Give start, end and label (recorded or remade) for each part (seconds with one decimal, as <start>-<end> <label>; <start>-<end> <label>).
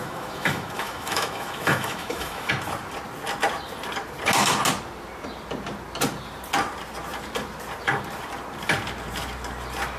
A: 0.0-2.5 remade; 2.5-10.0 recorded